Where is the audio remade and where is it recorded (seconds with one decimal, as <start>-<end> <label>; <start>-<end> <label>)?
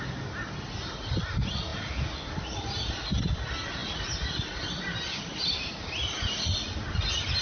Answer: 0.0-7.4 recorded